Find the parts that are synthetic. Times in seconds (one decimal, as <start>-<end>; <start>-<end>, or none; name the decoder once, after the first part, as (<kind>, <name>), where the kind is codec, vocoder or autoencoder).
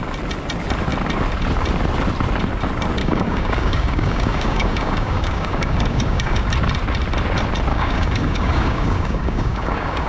3.0-6.5 (codec, DAC); 7.7-10.1